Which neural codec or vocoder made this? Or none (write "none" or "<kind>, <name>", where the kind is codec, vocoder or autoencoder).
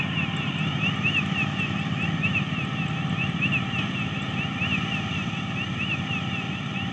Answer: none